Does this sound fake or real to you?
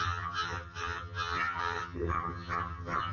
fake